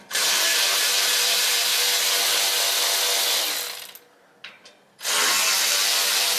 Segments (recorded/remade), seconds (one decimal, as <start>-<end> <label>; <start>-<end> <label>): 0.0-1.7 remade; 1.7-5.5 recorded; 5.5-6.4 remade